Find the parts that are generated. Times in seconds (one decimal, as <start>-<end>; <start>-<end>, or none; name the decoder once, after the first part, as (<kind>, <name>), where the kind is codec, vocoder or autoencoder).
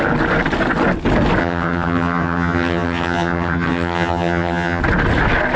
1.4-4.8 (vocoder, HiFi-GAN)